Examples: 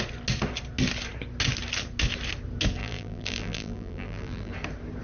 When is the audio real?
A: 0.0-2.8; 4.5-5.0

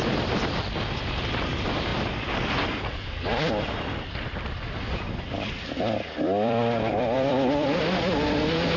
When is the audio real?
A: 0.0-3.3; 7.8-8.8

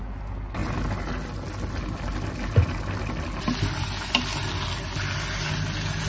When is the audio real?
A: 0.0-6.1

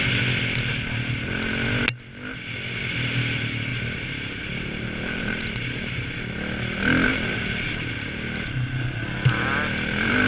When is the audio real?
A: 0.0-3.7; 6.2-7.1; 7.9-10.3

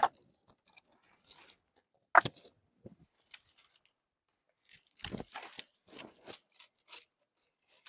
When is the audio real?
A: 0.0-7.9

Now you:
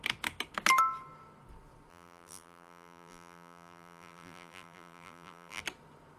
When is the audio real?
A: 0.0-1.9; 5.6-6.2

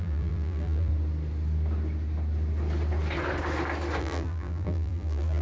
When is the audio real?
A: 0.9-4.0